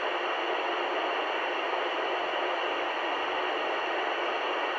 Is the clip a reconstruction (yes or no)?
no